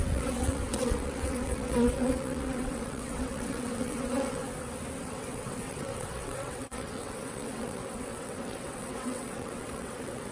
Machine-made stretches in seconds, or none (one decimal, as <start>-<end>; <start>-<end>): 0.0-4.4; 5.0-10.3